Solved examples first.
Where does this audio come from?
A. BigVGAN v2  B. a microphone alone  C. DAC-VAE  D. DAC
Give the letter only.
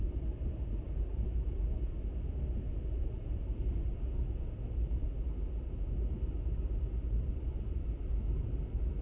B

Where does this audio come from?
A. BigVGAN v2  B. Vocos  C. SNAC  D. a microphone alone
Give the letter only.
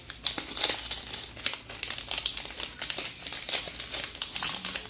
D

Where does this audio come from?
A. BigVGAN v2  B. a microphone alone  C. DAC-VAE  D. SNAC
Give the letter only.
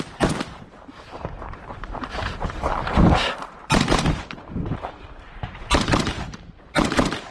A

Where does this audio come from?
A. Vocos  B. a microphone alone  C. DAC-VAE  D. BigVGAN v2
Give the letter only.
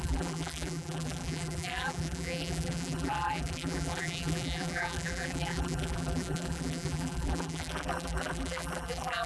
D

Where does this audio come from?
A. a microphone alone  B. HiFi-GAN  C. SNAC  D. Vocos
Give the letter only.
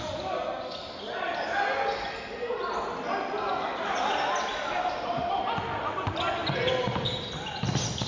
A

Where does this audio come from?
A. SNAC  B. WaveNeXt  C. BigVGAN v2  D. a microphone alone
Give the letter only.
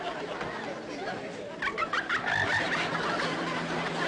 D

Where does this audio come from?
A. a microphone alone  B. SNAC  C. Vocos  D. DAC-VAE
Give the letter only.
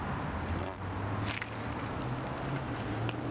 A